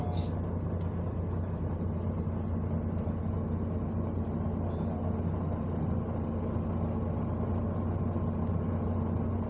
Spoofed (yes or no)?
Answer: no